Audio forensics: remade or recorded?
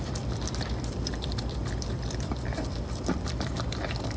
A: remade